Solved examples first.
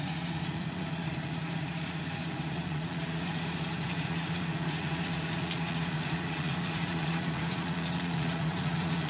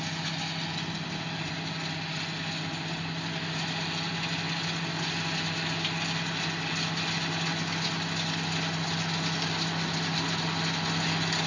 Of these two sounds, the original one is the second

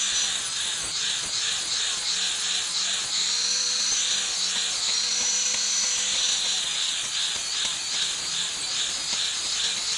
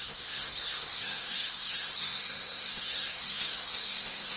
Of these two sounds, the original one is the first